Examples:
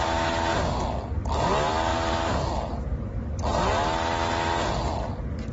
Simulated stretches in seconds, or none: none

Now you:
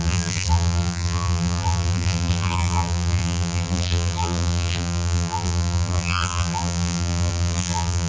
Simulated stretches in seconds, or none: 0.0-8.1 (vocoder, BigVGAN v2)

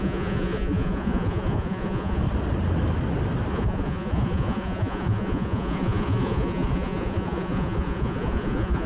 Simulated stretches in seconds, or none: 0.0-2.2 (vocoder, Vocos); 3.5-8.9

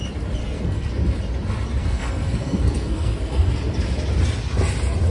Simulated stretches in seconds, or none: 0.4-0.9 (codec, SNAC); 1.8-3.5